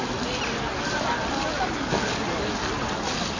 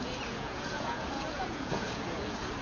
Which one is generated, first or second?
second